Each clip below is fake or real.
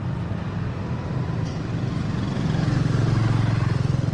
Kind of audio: real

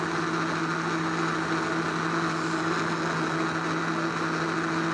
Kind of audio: real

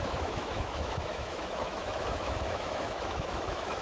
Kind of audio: fake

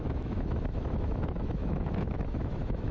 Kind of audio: fake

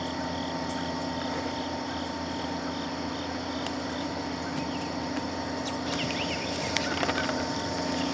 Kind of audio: real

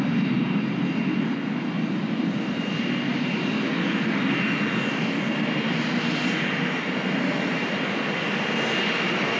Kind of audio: real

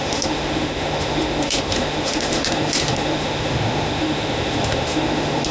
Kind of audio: fake